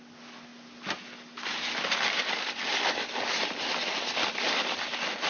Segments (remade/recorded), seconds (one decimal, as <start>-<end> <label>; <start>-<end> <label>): 0.0-5.3 recorded